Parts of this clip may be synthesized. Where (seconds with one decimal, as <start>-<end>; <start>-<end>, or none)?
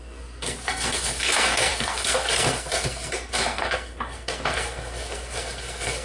0.0-6.0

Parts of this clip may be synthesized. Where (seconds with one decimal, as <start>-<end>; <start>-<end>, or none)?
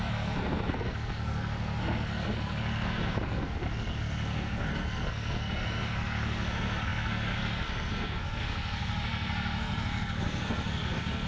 0.0-11.3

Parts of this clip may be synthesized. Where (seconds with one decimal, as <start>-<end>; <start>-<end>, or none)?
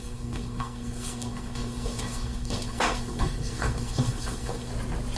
0.0-4.7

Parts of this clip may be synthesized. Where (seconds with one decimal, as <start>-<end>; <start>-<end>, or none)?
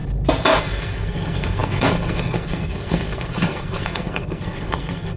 0.6-5.2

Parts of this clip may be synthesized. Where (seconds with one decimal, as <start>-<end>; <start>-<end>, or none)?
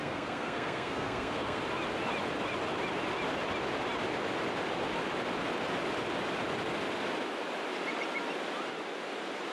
0.0-1.6